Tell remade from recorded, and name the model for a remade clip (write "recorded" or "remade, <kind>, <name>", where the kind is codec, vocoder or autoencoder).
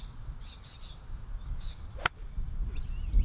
recorded